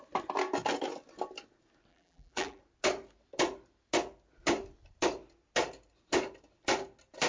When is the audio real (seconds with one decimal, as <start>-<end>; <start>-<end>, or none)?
0.0-1.9; 2.6-7.3